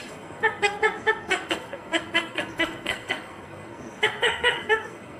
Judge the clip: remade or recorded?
remade